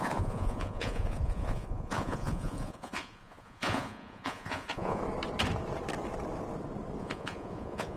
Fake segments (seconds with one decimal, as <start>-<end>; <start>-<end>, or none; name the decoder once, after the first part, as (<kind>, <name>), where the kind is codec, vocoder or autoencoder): 0.0-5.0 (vocoder, Vocos); 7.0-8.0

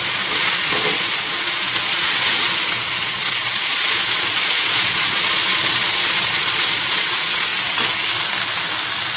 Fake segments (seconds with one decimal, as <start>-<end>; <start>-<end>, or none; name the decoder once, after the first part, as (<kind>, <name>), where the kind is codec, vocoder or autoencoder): 0.0-7.5 (vocoder, Vocos)

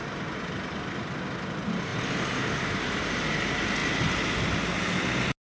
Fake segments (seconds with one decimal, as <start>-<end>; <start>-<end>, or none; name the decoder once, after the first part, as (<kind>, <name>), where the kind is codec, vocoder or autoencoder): none

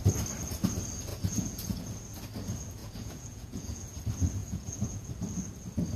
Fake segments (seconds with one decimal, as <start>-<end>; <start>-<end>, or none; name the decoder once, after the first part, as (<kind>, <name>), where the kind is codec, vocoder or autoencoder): 1.1-1.8 (vocoder, Vocos); 2.8-4.0; 4.4-5.1

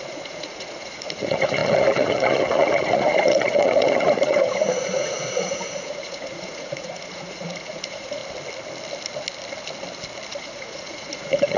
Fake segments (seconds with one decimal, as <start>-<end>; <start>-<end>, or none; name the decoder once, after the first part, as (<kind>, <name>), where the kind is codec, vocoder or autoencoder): 0.0-8.2 (vocoder, Vocos); 10.4-11.6